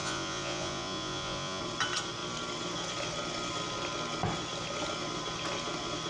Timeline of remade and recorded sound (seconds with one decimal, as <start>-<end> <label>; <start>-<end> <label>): 0.0-1.6 remade; 1.6-6.1 recorded